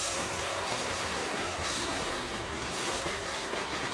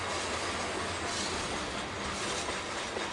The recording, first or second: second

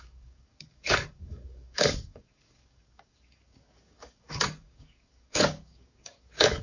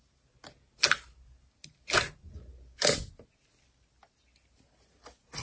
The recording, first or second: second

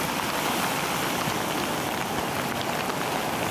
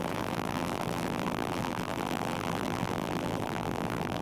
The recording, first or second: first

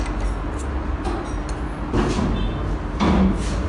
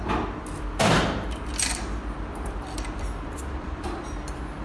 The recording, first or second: first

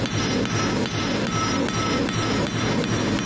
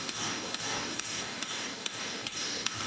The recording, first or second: first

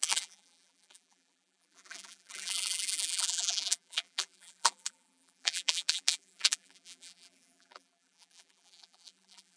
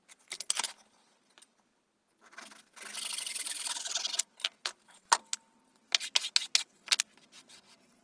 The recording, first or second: second